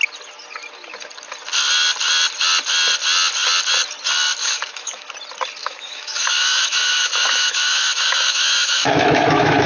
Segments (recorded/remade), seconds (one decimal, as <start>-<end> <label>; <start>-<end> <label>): 0.0-4.4 recorded; 4.4-5.1 remade; 5.1-5.6 recorded; 5.6-9.7 remade